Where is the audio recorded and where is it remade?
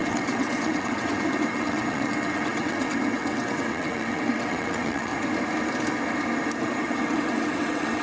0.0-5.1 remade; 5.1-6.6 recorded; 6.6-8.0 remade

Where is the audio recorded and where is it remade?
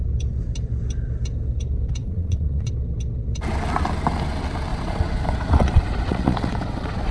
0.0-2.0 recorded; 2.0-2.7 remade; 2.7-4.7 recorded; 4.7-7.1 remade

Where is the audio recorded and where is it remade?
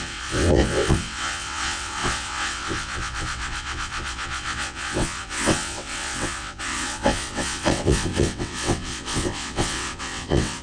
0.0-10.6 remade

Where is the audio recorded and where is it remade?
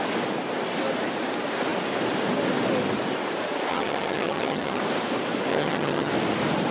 0.0-3.7 recorded; 3.7-4.8 remade; 4.8-5.5 recorded; 5.5-6.1 remade; 6.1-6.7 recorded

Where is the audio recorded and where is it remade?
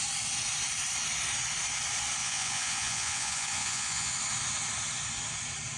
0.0-2.2 recorded; 2.2-4.1 remade; 4.1-5.8 recorded